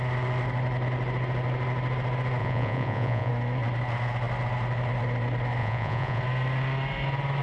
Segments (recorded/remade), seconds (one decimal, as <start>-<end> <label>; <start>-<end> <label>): 0.0-2.4 recorded; 2.4-3.3 remade; 3.3-5.6 recorded; 5.6-6.2 remade; 6.2-7.4 recorded

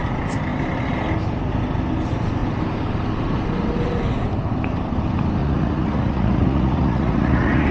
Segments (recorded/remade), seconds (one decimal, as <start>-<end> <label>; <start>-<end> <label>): 0.0-5.4 recorded; 5.4-7.7 remade

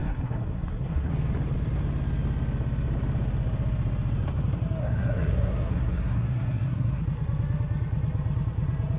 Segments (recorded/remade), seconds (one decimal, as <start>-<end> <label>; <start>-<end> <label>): 0.0-1.1 remade; 1.1-4.8 recorded; 4.8-7.0 remade; 7.0-9.0 recorded